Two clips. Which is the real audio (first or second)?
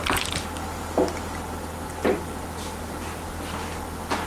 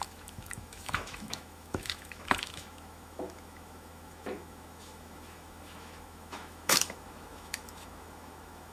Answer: first